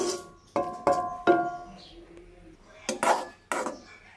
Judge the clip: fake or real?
real